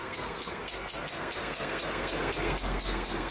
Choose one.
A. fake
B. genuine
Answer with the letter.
A